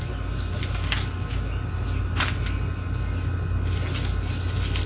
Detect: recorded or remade recorded